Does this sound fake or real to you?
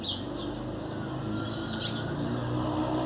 real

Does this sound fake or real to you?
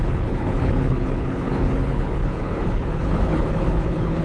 fake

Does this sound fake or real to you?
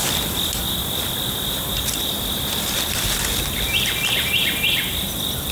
fake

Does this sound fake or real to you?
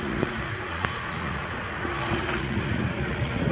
fake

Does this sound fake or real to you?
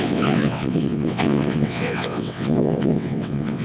fake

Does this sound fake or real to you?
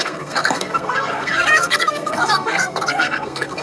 fake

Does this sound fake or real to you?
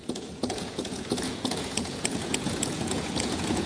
fake